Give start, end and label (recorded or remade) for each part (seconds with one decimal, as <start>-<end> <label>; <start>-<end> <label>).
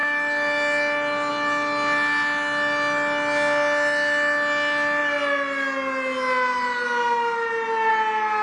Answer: 0.0-8.4 recorded